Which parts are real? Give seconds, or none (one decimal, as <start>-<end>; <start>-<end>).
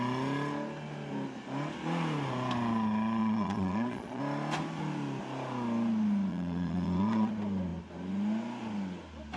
0.0-3.2; 4.2-6.3; 7.3-9.4